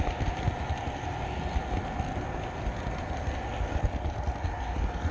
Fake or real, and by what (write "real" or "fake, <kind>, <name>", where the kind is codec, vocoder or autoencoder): real